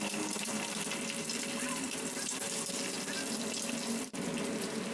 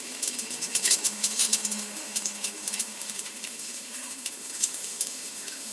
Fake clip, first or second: second